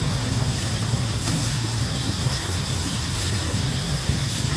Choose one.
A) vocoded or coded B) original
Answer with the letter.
A